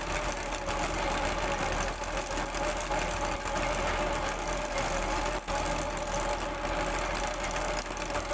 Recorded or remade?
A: recorded